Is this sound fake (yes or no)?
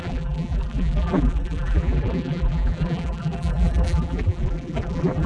yes